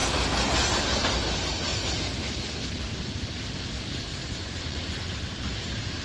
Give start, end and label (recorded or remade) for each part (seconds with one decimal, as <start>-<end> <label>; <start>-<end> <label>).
0.0-4.2 recorded; 4.2-5.1 remade; 5.1-6.0 recorded